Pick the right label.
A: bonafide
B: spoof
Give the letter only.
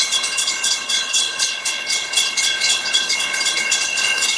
B